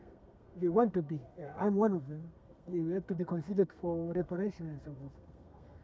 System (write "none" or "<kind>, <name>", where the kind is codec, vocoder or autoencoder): codec, SNAC